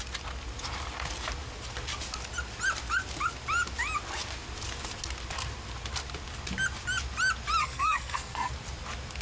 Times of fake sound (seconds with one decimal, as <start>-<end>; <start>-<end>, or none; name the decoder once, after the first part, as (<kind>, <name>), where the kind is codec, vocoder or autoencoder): 7.6-8.5 (codec, SNAC)